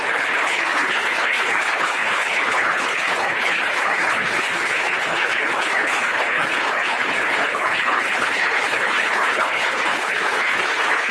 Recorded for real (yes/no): no